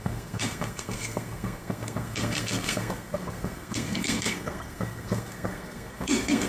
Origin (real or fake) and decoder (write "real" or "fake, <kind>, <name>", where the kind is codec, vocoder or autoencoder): fake, codec, SNAC